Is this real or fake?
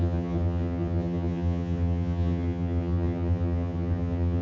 fake